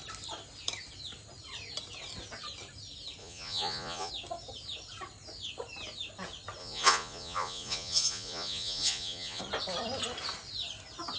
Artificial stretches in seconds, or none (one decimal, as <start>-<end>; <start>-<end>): 3.2-4.1; 6.6-9.4